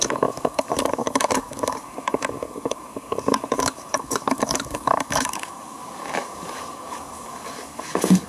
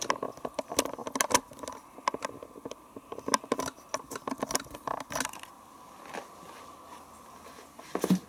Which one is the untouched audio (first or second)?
second